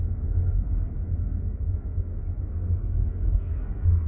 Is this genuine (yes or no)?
no